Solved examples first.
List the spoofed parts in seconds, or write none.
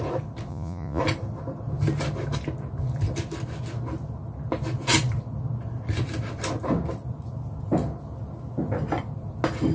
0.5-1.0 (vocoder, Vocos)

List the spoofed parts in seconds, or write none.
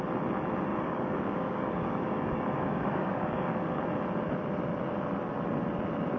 0.7-3.8 (codec, DAC)